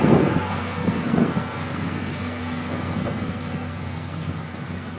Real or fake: fake